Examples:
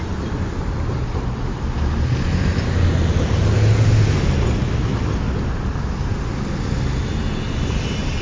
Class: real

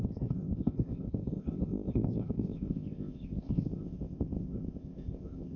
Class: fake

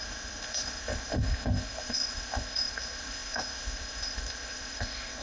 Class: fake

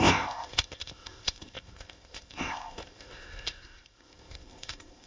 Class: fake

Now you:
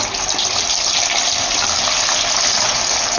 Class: real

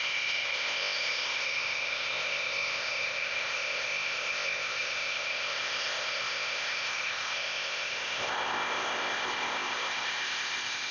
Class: fake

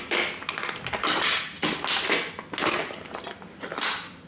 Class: real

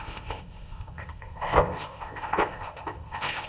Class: fake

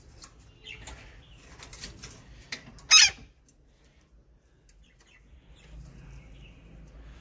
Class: real